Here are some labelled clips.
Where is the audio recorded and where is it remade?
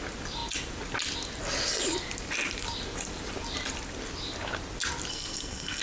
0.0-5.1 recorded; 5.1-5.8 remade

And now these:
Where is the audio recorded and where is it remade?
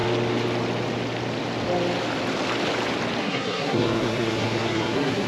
0.0-3.2 recorded; 3.2-5.3 remade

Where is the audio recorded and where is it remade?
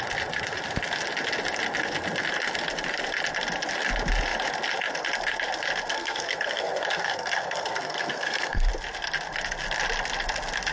0.0-5.9 recorded; 5.9-8.7 remade; 8.7-10.7 recorded